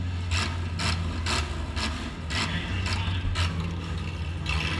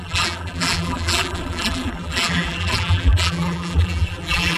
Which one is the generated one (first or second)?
second